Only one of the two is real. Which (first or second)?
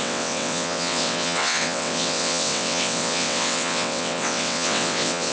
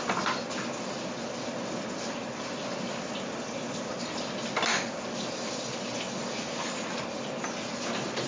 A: second